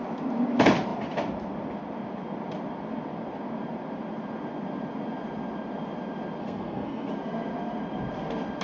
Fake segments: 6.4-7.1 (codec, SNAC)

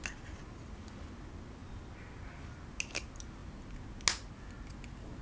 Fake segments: none

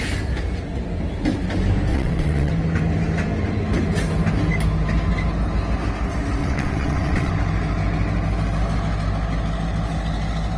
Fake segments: 1.9-2.5 (vocoder, WaveNeXt); 6.4-7.3

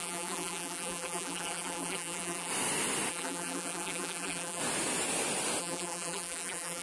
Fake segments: 0.0-2.5 (vocoder, BigVGAN v2); 3.1-4.6; 5.6-6.8

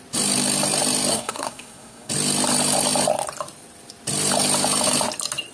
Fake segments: 1.1-2.1 (codec, SNAC)

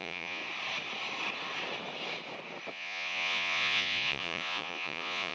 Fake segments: 0.0-0.4 (vocoder, Vocos); 2.7-5.3

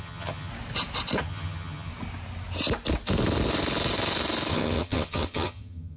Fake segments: 0.0-0.5 (vocoder, HiFi-GAN); 1.2-1.9; 4.5-6.0

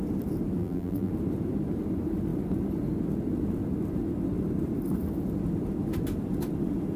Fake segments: 0.6-1.1 (vocoder, BigVGAN v2)